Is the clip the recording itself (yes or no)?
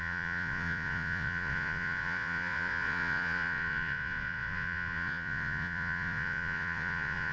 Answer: no